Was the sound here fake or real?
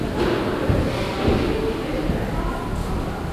real